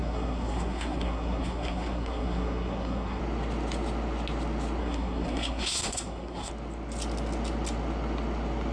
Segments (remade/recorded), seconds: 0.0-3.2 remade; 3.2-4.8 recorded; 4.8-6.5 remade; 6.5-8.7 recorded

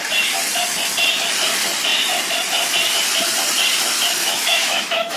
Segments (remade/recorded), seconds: 0.0-4.2 recorded; 4.2-5.2 remade

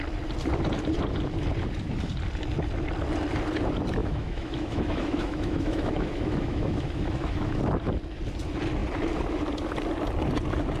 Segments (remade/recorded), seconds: 0.0-4.0 recorded; 4.0-7.6 remade; 7.6-10.8 recorded